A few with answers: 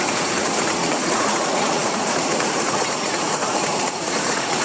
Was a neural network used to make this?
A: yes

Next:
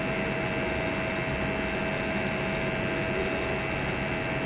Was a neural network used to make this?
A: no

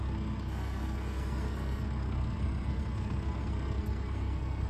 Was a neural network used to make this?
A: yes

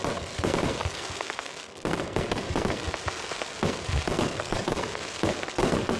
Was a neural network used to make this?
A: yes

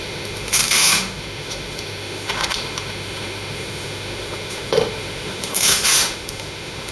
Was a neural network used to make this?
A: yes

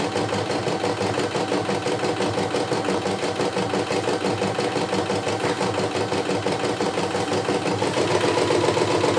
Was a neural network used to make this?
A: no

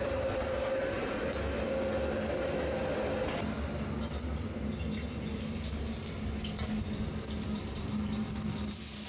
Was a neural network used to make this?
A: no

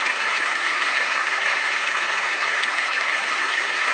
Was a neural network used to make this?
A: yes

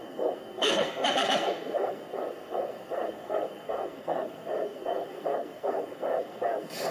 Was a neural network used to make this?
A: yes